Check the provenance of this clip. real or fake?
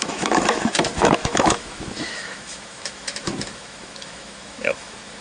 fake